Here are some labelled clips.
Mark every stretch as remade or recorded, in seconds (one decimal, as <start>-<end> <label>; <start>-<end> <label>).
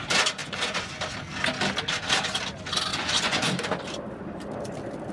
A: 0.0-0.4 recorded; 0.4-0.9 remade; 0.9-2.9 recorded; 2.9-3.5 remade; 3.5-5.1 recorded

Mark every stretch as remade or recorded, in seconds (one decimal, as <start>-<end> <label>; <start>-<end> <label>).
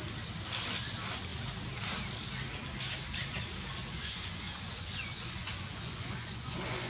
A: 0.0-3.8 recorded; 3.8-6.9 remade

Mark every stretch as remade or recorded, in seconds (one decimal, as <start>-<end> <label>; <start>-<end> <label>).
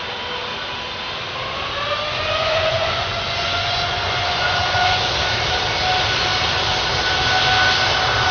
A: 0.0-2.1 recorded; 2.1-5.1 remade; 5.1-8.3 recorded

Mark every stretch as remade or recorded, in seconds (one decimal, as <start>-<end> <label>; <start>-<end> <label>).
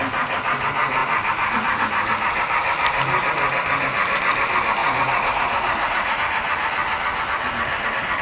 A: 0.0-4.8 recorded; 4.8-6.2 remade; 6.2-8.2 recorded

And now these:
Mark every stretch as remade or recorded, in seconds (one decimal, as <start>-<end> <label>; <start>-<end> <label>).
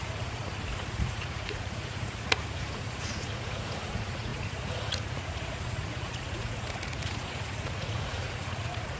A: 0.0-0.4 remade; 0.4-0.9 recorded; 0.9-9.0 remade